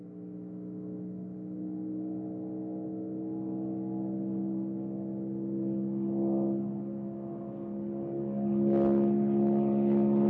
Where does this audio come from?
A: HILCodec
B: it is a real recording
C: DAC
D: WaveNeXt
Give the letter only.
B